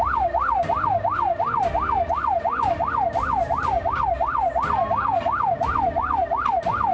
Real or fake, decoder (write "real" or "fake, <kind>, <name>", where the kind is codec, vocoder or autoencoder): real